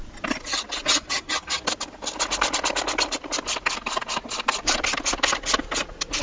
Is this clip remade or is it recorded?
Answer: recorded